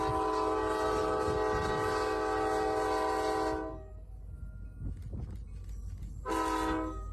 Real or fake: real